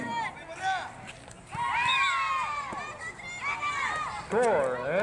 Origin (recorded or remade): recorded